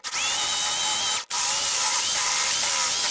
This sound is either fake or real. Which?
real